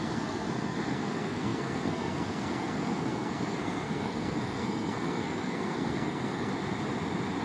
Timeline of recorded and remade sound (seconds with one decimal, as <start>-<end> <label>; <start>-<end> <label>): 0.0-6.5 remade; 6.5-7.4 recorded